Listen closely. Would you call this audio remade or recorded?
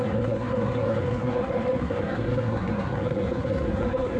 remade